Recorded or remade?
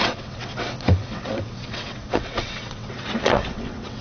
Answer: remade